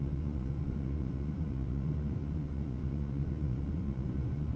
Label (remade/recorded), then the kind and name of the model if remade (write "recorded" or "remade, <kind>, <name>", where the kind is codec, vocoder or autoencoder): remade, vocoder, Vocos